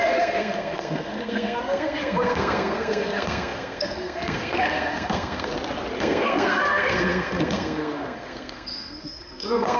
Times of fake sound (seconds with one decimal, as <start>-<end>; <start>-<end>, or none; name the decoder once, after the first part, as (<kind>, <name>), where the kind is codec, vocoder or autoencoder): 0.0-5.5 (codec, SNAC); 6.0-9.8